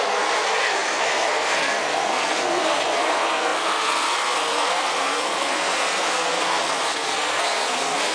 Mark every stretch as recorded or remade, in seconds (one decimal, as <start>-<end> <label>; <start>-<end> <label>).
0.0-8.1 remade

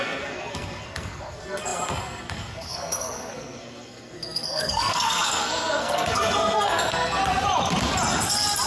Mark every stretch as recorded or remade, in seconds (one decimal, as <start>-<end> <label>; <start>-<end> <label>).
0.0-7.2 remade; 7.2-8.7 recorded

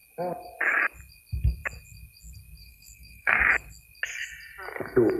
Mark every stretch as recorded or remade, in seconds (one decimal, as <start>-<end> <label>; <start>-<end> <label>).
0.0-2.6 recorded; 2.6-3.4 remade; 3.4-5.2 recorded

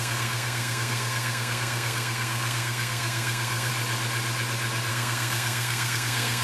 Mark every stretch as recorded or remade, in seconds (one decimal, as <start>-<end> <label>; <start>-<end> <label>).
0.0-3.7 remade; 3.7-4.9 recorded; 4.9-6.4 remade

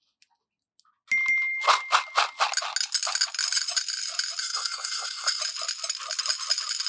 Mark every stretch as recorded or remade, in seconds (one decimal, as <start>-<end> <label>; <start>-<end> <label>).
0.0-4.4 recorded; 4.4-5.4 remade; 5.4-6.9 recorded

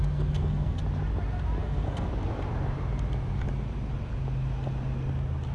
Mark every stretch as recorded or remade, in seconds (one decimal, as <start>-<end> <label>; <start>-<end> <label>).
0.0-0.8 remade; 0.8-1.6 recorded; 1.6-2.1 remade; 2.1-5.5 recorded